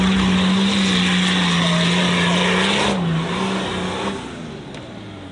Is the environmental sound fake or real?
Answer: real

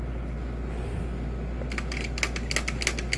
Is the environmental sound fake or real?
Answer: real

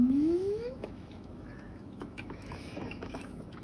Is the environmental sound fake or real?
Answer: fake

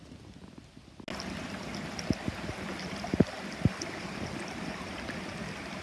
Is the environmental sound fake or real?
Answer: real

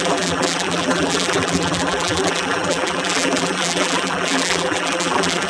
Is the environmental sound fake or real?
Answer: fake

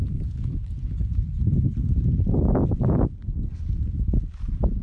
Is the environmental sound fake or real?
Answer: real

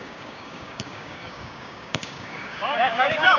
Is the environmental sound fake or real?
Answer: fake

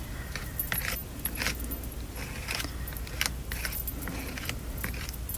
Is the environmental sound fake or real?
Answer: real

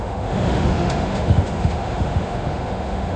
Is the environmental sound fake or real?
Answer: fake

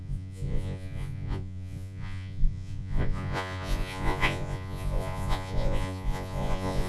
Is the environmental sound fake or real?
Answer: fake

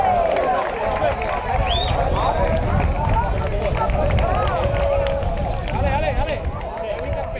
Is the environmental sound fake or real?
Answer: real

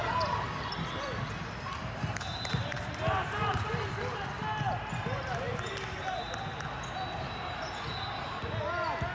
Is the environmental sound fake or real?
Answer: real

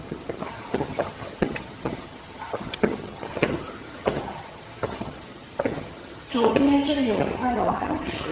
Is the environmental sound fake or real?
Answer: fake